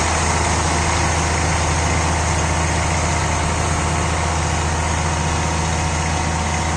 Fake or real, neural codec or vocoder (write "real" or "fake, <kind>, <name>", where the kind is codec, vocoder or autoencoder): real